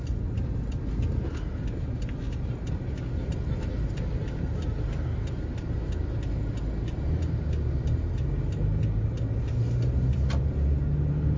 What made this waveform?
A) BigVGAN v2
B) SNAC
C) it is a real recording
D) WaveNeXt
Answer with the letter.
C